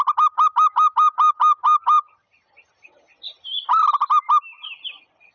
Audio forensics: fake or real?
real